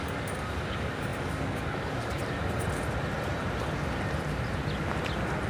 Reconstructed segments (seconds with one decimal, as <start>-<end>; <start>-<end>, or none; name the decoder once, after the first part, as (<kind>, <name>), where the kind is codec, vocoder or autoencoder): 0.0-2.2 (codec, DAC)